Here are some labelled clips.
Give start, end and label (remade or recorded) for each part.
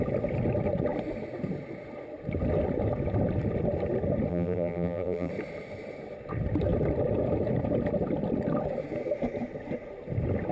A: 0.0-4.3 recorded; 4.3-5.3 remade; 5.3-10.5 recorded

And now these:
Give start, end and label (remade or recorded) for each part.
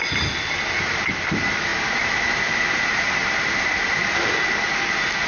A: 0.0-1.7 recorded; 1.7-2.4 remade; 2.4-3.2 recorded; 3.2-3.9 remade; 3.9-5.3 recorded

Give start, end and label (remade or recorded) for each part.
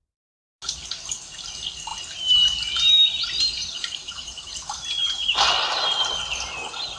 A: 0.0-3.5 recorded; 3.5-4.5 remade; 4.5-7.0 recorded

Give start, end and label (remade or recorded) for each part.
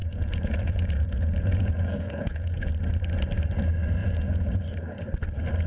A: 0.0-2.7 remade; 2.7-4.0 recorded; 4.0-4.6 remade; 4.6-5.7 recorded